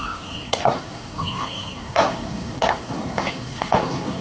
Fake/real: fake